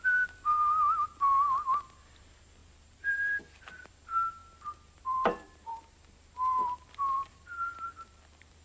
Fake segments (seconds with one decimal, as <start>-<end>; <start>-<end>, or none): 2.6-3.9; 4.4-8.6